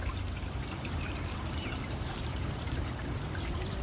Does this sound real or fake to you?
fake